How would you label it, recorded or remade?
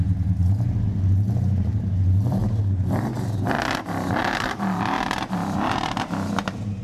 recorded